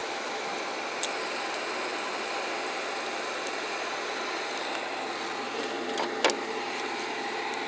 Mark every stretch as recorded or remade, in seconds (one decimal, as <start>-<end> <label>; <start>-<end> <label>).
0.0-0.5 remade; 0.5-7.7 recorded